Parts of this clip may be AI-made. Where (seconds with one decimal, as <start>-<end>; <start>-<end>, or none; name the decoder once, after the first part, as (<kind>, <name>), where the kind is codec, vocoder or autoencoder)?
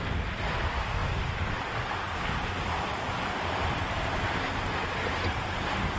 1.0-4.6 (vocoder, BigVGAN v2)